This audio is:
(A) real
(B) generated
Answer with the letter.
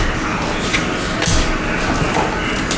A